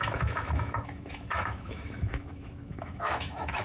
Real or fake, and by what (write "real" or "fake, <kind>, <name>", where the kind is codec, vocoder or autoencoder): fake, autoencoder, DAC-VAE